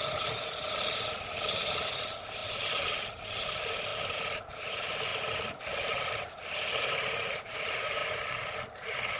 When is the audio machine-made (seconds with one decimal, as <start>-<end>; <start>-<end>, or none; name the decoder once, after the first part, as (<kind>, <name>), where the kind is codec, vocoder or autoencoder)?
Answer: 0.0-5.1 (vocoder, BigVGAN v2); 5.6-8.0